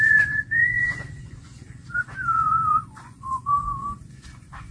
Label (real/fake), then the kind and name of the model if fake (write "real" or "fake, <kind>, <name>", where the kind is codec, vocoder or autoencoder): fake, vocoder, Vocos